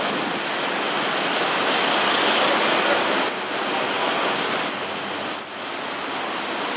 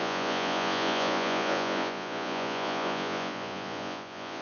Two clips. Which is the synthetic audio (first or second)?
second